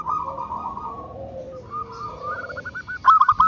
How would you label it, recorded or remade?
remade